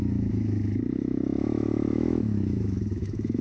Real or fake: fake